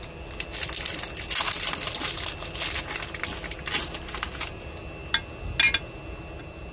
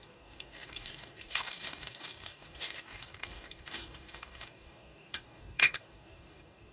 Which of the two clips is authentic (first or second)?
first